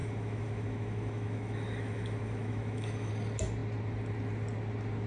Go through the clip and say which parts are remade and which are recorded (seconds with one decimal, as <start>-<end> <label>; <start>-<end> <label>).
0.0-3.1 remade; 3.1-5.1 recorded